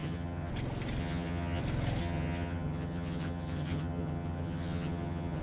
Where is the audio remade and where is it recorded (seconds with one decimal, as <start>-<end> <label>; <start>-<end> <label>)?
0.0-0.5 remade; 0.5-1.0 recorded; 1.0-1.6 remade; 1.6-2.0 recorded; 2.0-5.4 remade